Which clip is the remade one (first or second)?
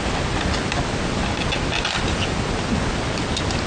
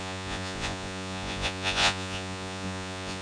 second